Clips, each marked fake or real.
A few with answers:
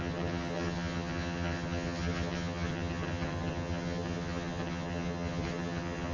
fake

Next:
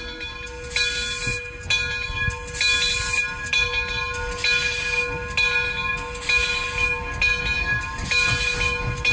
real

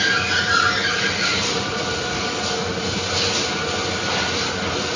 real